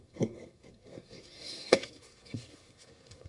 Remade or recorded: remade